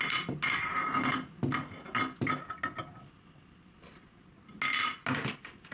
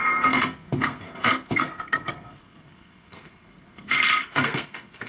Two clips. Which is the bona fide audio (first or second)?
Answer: first